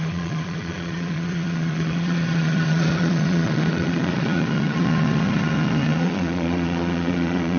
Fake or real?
fake